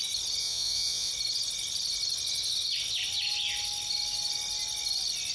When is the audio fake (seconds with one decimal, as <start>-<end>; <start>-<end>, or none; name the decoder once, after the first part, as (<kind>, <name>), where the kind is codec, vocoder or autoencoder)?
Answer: 0.4-1.1 (vocoder, Vocos)